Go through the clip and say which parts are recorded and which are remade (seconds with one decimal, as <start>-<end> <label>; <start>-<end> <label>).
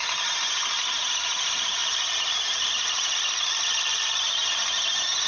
0.0-5.3 recorded